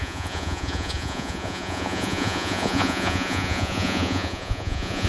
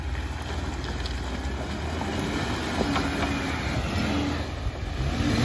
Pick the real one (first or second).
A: second